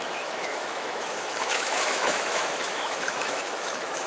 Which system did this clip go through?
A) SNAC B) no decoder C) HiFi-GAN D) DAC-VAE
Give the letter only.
D